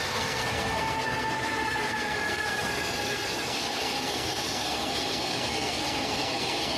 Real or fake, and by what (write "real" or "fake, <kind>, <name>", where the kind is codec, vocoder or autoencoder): fake, codec, SNAC